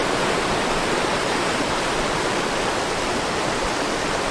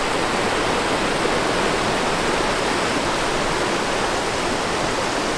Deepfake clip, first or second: first